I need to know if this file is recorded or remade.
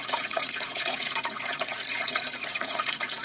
remade